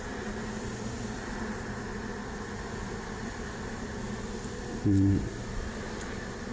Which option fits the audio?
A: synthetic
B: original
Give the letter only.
B